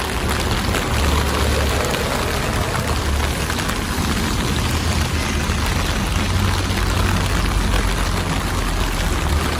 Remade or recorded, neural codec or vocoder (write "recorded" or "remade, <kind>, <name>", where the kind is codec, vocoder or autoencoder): recorded